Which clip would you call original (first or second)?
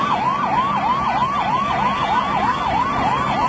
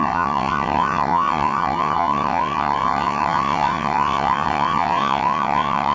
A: first